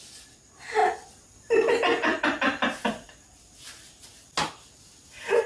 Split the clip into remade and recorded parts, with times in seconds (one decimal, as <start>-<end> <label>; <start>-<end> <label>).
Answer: 0.0-5.5 recorded